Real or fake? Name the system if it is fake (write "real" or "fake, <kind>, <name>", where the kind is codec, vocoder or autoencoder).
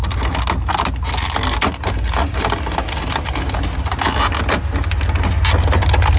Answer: real